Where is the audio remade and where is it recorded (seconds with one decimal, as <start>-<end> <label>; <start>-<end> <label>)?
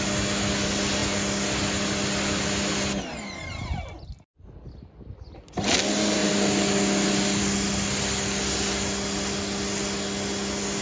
0.0-10.8 recorded